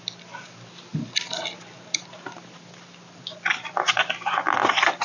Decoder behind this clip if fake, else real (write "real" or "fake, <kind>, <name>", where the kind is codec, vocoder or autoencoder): real